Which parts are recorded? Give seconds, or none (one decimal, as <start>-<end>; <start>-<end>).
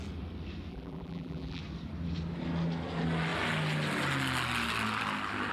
0.0-0.7; 1.6-5.5